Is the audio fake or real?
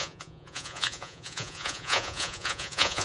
fake